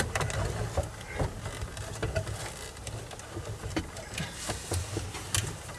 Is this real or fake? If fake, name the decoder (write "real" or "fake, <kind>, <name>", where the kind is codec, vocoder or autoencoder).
real